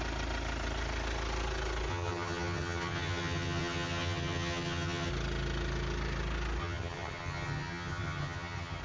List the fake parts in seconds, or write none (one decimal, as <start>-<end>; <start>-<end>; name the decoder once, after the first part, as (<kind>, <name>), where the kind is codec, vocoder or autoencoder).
1.9-5.1 (vocoder, HiFi-GAN); 6.6-8.8